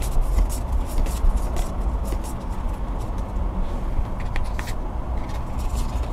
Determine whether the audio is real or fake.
real